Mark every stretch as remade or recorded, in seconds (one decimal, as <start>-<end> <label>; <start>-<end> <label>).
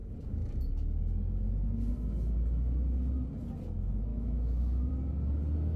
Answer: 0.0-4.1 recorded; 4.1-4.9 remade; 4.9-5.8 recorded